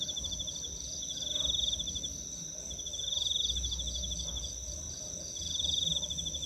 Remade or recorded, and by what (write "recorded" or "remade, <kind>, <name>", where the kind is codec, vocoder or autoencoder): recorded